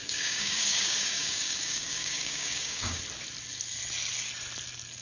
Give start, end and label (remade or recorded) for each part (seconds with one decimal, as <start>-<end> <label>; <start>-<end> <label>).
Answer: 0.0-3.0 remade; 3.0-5.0 recorded